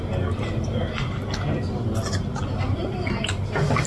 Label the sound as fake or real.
real